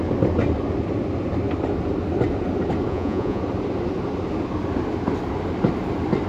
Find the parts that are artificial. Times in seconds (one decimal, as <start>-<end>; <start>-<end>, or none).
2.9-3.4